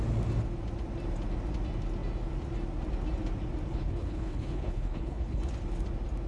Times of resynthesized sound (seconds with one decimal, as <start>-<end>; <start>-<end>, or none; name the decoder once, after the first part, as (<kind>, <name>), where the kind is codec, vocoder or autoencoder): 3.7-5.4 (codec, HILCodec)

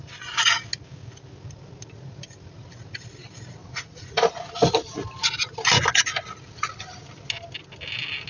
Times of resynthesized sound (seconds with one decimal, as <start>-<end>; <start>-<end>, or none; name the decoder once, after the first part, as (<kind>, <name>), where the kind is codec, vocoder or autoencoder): 3.6-4.3 (vocoder, Vocos)

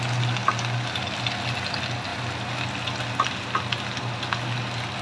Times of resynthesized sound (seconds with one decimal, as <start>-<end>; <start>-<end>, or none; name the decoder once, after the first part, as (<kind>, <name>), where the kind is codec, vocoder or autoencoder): none

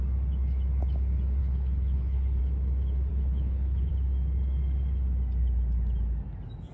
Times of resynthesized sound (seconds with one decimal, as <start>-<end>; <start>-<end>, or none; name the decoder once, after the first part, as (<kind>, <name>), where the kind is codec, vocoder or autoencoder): 1.4-2.4 (codec, HILCodec); 3.1-3.9